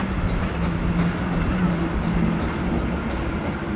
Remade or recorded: recorded